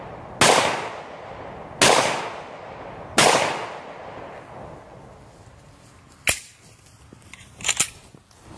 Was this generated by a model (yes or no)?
no